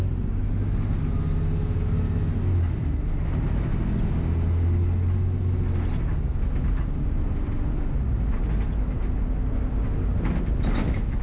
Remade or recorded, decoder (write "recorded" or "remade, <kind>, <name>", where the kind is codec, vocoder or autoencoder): recorded